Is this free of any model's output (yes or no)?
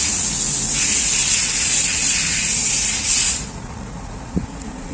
no